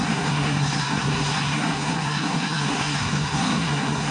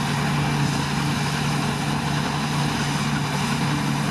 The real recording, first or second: second